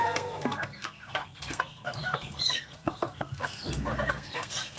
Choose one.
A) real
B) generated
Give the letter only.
B